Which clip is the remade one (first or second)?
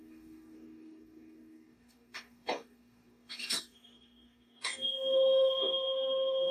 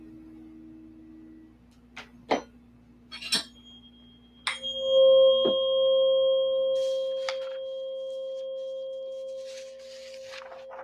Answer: first